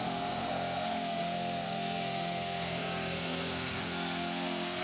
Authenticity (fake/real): fake